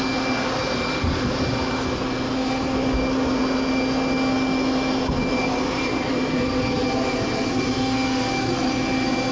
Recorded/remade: recorded